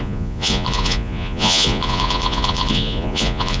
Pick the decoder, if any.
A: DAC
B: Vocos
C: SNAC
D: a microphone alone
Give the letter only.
B